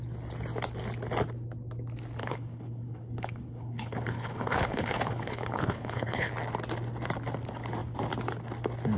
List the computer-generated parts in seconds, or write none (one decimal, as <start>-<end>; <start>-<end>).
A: 2.2-6.3